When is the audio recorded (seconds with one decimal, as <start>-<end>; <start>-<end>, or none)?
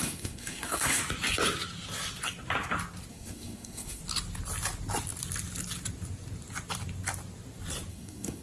1.0-3.1; 4.0-7.9